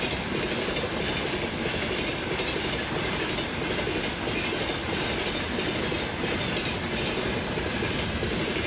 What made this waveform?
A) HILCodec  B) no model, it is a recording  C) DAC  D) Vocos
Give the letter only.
B